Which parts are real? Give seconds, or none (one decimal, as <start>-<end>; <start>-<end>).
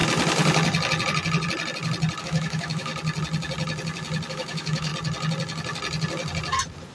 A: 0.0-2.2; 2.9-4.3; 4.9-6.9